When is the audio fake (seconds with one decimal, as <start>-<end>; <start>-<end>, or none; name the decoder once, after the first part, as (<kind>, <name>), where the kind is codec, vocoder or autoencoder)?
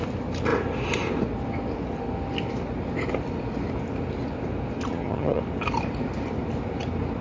4.9-5.4 (vocoder, HiFi-GAN)